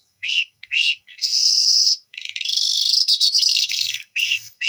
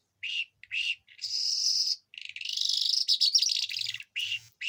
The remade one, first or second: first